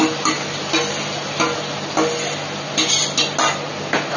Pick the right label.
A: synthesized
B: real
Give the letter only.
B